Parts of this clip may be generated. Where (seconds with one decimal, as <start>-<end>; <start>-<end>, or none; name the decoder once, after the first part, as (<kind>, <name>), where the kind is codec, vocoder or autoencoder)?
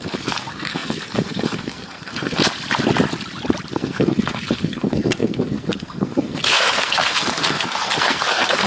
0.0-2.4 (codec, SNAC); 3.7-8.7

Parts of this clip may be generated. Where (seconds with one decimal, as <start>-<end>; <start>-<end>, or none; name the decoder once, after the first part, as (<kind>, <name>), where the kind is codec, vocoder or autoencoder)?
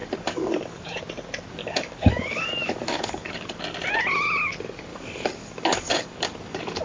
0.0-1.0 (codec, DAC); 1.6-3.6; 4.9-6.8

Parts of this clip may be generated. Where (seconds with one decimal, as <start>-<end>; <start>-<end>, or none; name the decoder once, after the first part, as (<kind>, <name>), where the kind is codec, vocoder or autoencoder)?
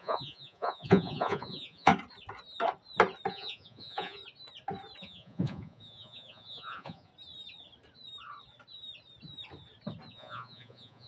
0.0-1.9 (vocoder, Vocos); 3.3-4.2; 5.0-7.1; 10.1-11.1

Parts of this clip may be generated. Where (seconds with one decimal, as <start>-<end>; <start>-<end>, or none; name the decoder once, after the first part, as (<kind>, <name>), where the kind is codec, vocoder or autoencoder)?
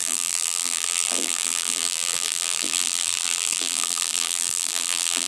0.0-5.3 (vocoder, BigVGAN v2)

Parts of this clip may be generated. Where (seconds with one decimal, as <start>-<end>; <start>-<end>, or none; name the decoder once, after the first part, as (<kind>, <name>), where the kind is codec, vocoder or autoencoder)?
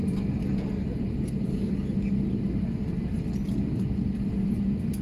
none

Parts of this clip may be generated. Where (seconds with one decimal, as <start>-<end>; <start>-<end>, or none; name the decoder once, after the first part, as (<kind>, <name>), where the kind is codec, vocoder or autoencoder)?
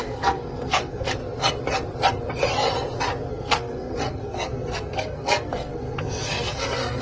0.0-1.2 (codec, SNAC); 3.3-7.0